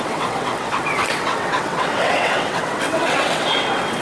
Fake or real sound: fake